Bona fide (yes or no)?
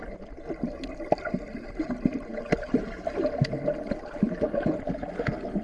yes